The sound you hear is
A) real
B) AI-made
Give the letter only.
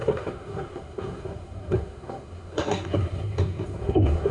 B